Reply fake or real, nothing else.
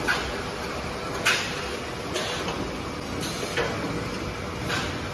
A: real